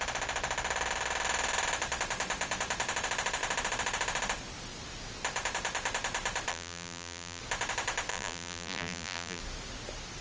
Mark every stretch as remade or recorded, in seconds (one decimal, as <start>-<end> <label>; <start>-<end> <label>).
0.0-6.5 recorded; 6.5-7.4 remade; 7.4-8.1 recorded; 8.1-9.4 remade; 9.4-10.2 recorded